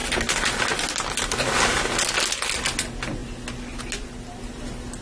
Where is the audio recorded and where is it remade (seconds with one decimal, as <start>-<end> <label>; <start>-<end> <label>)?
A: 0.0-5.0 recorded